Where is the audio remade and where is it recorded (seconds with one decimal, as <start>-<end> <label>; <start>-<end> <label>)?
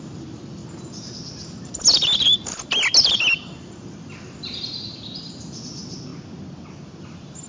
0.0-0.6 remade; 0.6-3.9 recorded; 3.9-6.1 remade; 6.1-7.0 recorded; 7.0-7.5 remade